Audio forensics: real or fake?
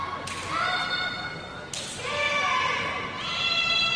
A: real